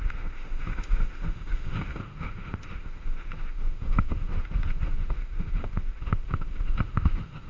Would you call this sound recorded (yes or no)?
no